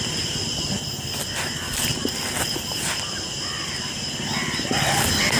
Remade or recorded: recorded